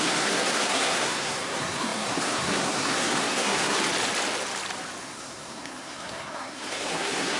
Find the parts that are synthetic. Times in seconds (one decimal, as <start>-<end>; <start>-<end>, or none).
0.0-3.8; 5.0-7.4